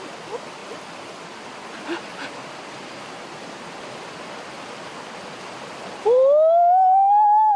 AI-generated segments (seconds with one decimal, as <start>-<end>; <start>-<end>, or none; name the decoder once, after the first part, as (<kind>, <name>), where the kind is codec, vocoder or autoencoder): none